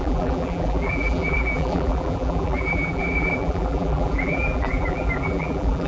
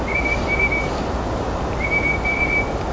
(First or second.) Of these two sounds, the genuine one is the second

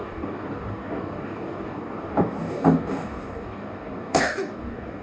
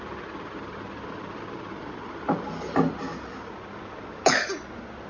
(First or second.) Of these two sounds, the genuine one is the second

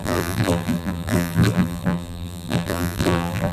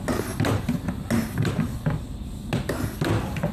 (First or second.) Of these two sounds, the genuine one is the second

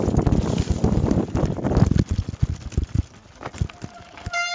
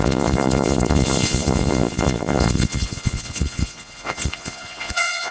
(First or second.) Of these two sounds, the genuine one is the first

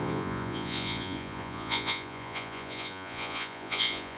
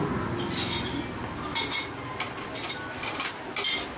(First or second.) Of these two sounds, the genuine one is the second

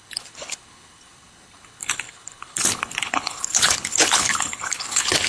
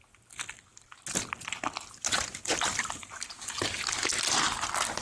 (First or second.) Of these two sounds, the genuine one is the second